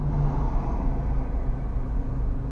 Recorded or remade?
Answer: recorded